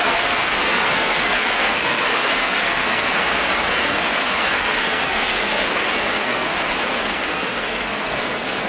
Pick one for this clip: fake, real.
fake